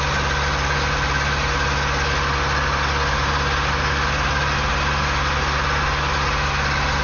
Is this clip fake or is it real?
real